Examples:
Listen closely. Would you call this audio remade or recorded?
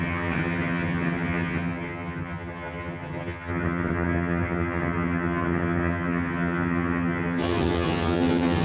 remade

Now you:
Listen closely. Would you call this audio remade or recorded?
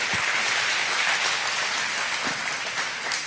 recorded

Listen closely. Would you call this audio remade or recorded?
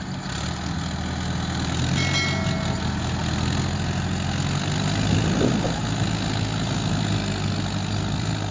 recorded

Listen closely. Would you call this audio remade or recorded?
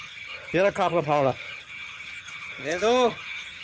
remade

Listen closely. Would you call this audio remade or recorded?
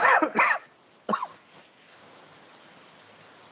recorded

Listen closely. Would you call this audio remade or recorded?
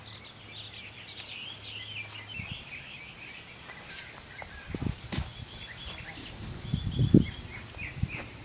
recorded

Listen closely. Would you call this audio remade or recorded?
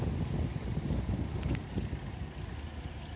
recorded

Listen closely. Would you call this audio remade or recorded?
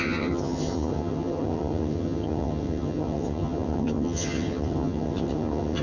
remade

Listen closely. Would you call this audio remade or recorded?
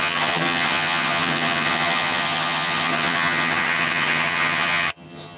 remade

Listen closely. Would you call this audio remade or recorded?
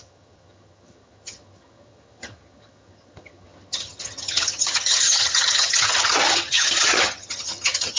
remade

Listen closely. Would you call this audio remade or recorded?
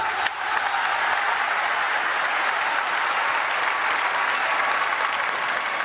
recorded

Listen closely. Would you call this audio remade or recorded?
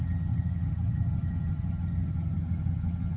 remade